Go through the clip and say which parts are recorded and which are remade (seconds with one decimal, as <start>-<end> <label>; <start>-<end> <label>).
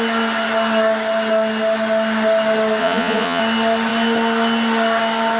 0.0-2.8 recorded; 2.8-3.4 remade; 3.4-5.4 recorded